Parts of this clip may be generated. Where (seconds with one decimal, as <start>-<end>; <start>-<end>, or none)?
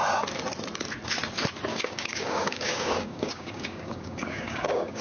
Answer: 1.7-5.0